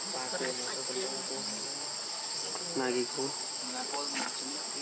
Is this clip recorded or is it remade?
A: recorded